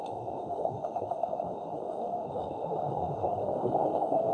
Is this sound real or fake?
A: fake